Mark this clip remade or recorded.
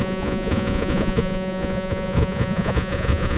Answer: remade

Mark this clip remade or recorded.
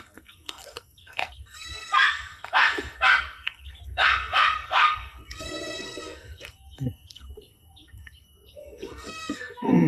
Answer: remade